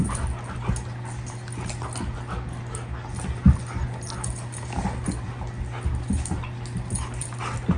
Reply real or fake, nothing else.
real